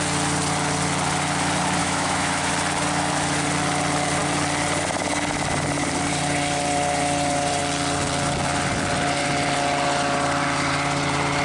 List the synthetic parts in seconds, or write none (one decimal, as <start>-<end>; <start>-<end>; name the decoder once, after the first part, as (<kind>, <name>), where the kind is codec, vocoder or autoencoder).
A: 1.8-2.5 (autoencoder, DAC-VAE)